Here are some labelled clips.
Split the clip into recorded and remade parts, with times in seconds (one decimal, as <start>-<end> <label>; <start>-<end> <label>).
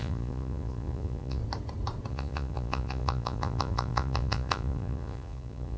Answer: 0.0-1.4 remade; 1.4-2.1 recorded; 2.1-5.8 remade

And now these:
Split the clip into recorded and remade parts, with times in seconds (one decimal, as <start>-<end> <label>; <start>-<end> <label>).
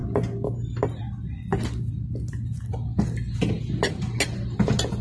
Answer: 0.0-5.0 recorded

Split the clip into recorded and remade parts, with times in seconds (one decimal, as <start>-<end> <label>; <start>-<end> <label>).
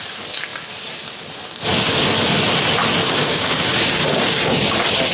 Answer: 0.0-3.0 recorded; 3.0-4.6 remade; 4.6-5.1 recorded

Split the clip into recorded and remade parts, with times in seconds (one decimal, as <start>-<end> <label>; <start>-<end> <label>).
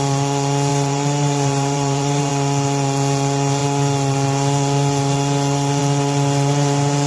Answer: 0.0-0.7 recorded; 0.7-2.3 remade; 2.3-7.1 recorded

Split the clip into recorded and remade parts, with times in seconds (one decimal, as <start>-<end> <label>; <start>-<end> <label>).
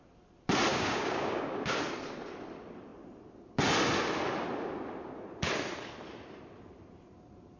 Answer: 0.0-0.7 recorded; 0.7-1.8 remade; 1.8-7.6 recorded